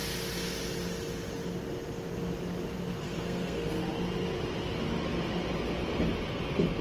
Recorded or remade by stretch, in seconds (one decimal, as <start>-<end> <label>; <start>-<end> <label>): 0.0-2.8 recorded; 2.8-3.8 remade; 3.8-6.8 recorded

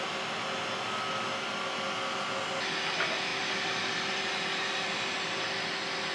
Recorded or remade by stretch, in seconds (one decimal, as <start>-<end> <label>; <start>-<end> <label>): 0.0-6.1 recorded